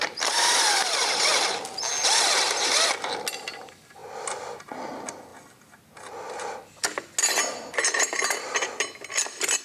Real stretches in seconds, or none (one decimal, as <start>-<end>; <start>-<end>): 1.9-9.6